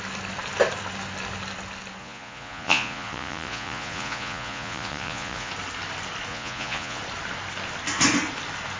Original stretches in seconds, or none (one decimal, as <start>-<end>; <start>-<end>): 0.0-2.0; 5.5-6.3; 7.0-8.8